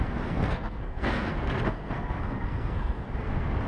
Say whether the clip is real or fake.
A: fake